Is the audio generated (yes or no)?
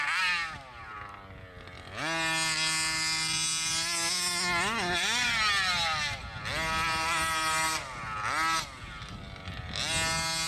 no